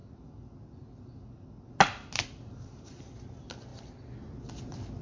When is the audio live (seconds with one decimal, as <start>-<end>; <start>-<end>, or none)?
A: 0.0-5.0